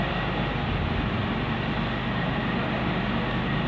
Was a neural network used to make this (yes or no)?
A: no